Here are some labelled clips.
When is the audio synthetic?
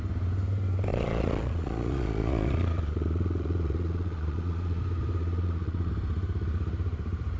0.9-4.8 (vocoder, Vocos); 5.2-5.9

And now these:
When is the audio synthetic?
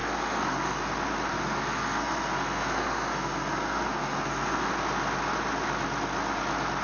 0.0-0.9 (codec, SNAC); 1.3-4.7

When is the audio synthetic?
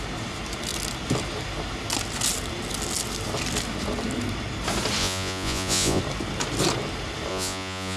5.0-6.0 (vocoder, Vocos); 7.3-8.0